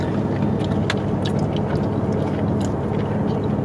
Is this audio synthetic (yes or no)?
no